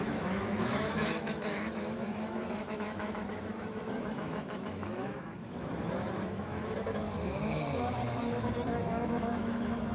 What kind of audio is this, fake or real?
fake